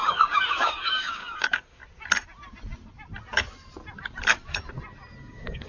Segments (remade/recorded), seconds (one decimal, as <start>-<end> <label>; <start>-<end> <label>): 0.0-1.8 remade; 1.8-5.2 recorded; 5.2-5.7 remade